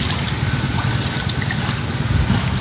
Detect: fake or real real